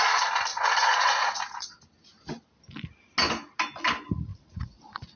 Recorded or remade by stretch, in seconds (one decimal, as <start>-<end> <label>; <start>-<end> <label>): 0.0-0.5 recorded; 0.5-1.7 remade; 1.7-4.3 recorded; 4.3-5.2 remade